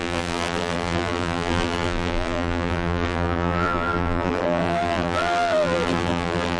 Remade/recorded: remade